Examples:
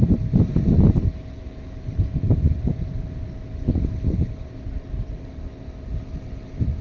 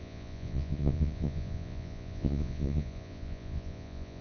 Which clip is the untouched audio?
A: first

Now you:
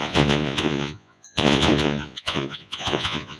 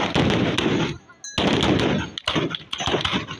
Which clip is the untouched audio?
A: second